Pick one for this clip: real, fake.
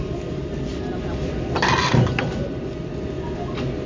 real